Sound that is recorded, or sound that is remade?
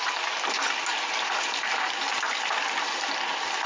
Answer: recorded